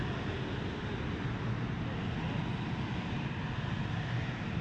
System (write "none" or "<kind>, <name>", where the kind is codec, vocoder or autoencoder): none